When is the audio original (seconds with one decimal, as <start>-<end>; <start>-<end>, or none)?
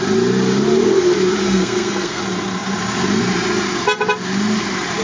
0.0-1.4; 2.2-5.0